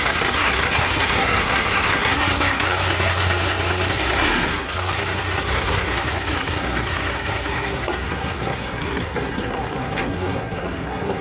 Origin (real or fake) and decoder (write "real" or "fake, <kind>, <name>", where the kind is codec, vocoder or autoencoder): fake, codec, SNAC